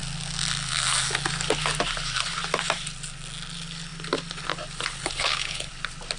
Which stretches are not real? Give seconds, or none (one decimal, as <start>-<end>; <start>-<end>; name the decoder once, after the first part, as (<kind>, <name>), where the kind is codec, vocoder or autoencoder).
5.0-5.7 (codec, HILCodec)